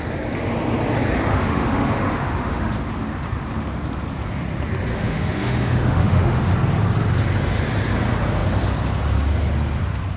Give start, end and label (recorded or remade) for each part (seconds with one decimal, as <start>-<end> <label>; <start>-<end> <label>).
0.0-1.3 recorded; 1.3-2.9 remade; 2.9-4.9 recorded; 4.9-6.5 remade; 6.5-10.2 recorded